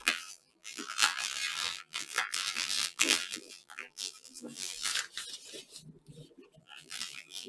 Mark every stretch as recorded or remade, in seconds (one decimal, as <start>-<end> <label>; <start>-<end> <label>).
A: 0.0-4.9 remade; 4.9-6.6 recorded; 6.6-7.5 remade